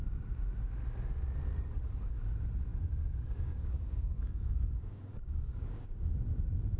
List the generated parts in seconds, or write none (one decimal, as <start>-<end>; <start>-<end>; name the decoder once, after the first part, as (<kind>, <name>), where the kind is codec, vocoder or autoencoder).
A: 2.7-6.2 (codec, DAC)